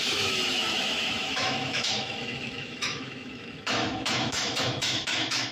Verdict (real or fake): fake